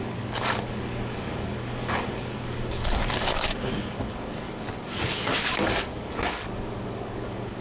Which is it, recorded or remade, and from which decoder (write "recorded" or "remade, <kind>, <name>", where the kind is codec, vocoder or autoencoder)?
remade, codec, DAC